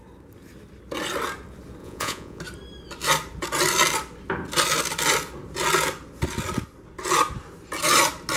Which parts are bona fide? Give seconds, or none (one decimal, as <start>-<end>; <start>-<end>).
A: 0.0-1.8; 2.4-8.4